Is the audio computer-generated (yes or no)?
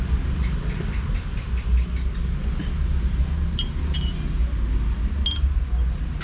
no